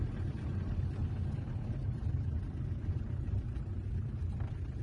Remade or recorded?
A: remade